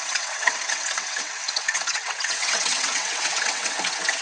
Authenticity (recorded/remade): remade